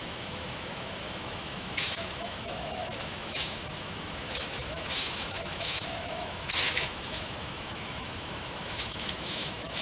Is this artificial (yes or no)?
yes